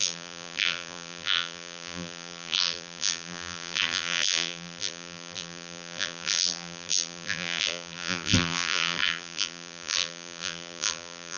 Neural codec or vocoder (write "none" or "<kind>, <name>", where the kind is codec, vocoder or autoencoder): vocoder, BigVGAN v2